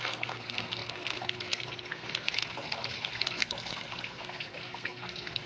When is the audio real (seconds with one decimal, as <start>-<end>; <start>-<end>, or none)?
none